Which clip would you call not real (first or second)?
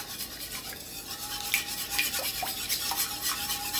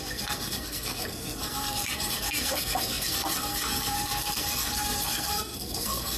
second